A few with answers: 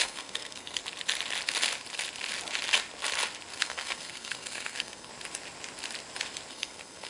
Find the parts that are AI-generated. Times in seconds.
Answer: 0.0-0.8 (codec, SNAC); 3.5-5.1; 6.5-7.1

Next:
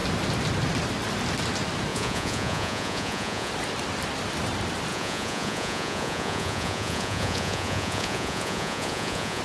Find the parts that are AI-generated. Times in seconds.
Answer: 1.9-3.5 (vocoder, Vocos); 4.9-9.4